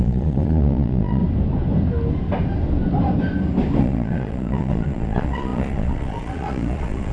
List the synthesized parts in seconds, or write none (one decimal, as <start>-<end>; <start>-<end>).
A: 0.0-1.2; 3.8-7.1